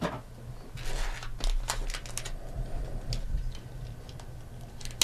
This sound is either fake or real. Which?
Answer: real